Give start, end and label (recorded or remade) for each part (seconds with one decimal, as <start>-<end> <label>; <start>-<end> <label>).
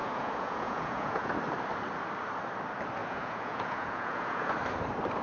0.0-1.3 remade; 1.3-3.0 recorded; 3.0-4.5 remade; 4.5-5.2 recorded